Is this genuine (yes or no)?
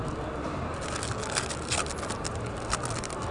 yes